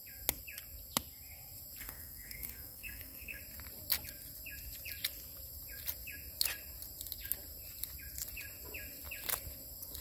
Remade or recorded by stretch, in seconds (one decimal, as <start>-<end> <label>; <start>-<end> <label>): 0.0-1.8 recorded; 1.8-3.4 remade; 3.4-10.0 recorded